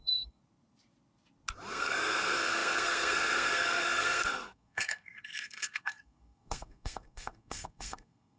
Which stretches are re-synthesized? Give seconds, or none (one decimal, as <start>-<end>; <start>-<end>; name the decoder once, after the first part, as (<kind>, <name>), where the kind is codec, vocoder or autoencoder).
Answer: 0.0-0.4 (codec, SNAC); 1.7-8.4